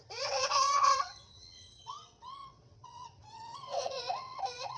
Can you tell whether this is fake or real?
fake